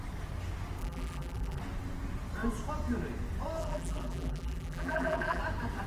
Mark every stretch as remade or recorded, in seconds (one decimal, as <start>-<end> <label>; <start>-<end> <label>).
0.0-0.8 recorded; 0.8-1.6 remade; 1.6-3.6 recorded; 3.6-5.4 remade; 5.4-5.9 recorded